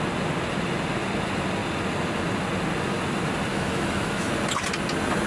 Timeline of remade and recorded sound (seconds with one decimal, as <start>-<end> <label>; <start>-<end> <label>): 0.0-3.5 recorded; 3.5-4.3 remade; 4.3-5.3 recorded